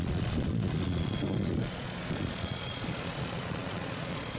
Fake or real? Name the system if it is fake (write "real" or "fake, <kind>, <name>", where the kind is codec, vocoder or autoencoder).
fake, vocoder, Vocos